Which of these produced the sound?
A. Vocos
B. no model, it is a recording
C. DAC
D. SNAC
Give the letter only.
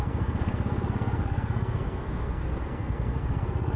D